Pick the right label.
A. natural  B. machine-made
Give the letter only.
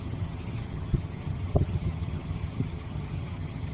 B